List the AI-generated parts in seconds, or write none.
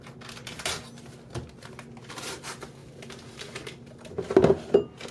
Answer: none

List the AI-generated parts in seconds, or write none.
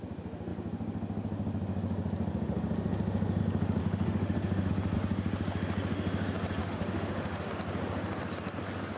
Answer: 3.8-4.7 (autoencoder, DAC-VAE); 6.6-7.5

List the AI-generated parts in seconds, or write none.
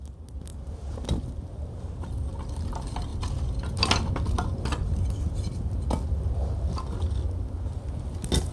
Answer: none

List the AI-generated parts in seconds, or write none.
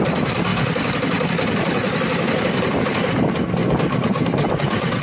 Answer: none